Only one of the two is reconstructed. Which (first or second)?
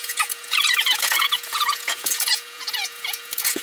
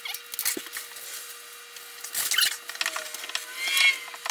first